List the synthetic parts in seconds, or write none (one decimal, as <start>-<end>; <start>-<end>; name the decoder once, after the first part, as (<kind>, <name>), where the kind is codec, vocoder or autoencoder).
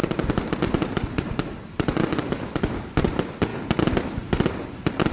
0.0-2.9 (vocoder, BigVGAN v2)